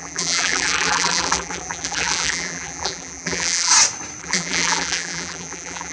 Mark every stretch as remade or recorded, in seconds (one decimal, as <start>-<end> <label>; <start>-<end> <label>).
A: 0.0-3.7 remade; 3.7-4.2 recorded; 4.2-5.9 remade